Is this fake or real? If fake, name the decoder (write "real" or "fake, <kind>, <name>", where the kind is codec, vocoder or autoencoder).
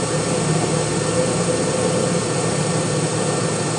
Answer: real